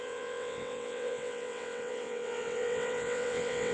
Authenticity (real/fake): fake